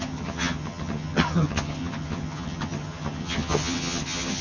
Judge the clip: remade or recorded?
remade